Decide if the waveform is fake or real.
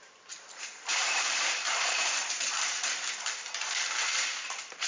fake